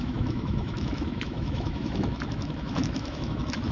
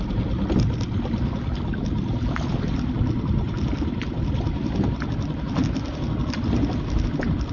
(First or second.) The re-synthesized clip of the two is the first